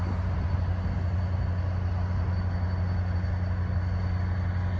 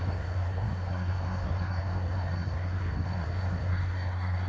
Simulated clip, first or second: second